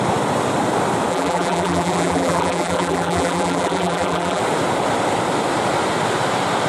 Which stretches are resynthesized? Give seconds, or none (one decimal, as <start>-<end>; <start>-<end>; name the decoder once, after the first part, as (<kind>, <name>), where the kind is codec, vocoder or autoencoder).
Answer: 1.1-4.4 (vocoder, BigVGAN v2)